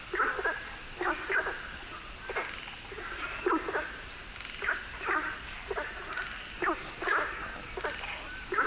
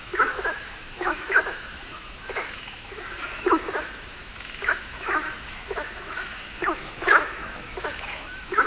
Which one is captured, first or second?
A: first